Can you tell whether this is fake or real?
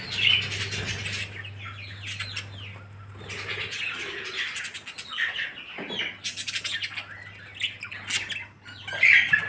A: real